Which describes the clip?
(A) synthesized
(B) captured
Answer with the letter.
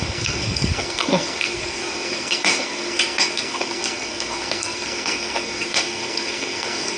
A